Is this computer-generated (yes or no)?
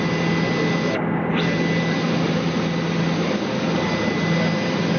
no